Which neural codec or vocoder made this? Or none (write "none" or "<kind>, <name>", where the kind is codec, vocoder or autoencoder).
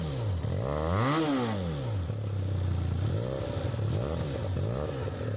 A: none